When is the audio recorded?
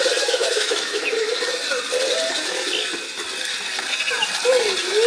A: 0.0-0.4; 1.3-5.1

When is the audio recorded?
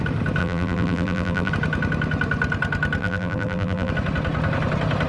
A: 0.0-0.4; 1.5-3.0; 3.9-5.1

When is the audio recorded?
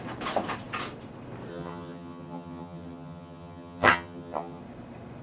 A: 0.0-1.5; 4.6-5.2